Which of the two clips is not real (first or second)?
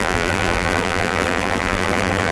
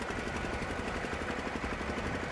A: first